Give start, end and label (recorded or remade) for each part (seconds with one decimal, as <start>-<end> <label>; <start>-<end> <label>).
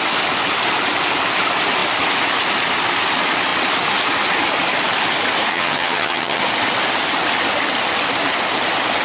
0.0-5.5 recorded; 5.5-6.4 remade; 6.4-9.0 recorded